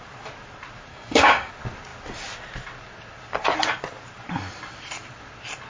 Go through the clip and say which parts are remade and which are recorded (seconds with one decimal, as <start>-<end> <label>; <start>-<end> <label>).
0.0-0.9 recorded; 0.9-1.5 remade; 1.5-5.7 recorded